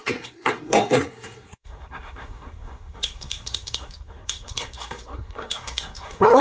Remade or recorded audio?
remade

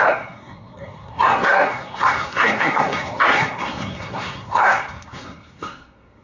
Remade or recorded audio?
remade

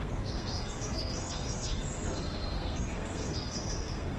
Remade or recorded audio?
remade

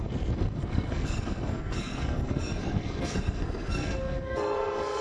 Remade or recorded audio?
remade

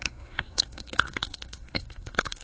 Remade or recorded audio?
remade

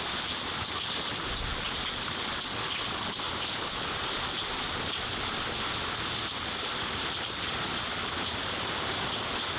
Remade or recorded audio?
recorded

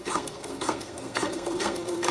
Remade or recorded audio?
remade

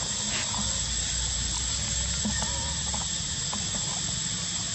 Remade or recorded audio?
recorded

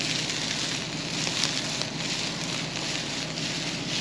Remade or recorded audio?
recorded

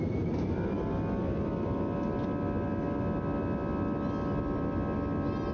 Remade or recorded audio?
recorded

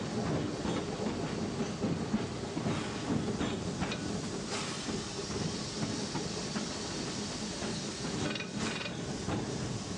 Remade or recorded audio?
recorded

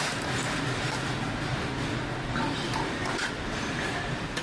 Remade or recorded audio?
recorded